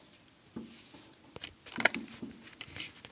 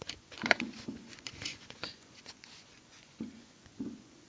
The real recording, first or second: first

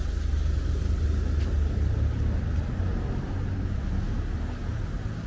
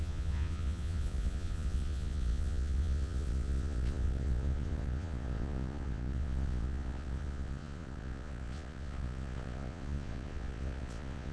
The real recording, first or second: first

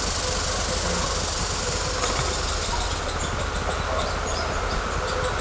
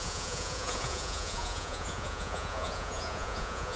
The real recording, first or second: first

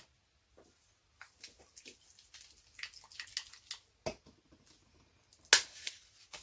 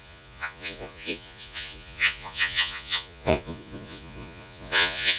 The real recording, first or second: first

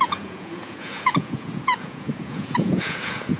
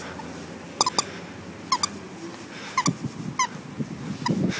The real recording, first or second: second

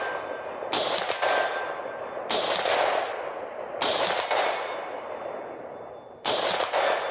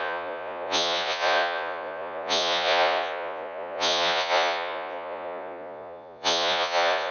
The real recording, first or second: first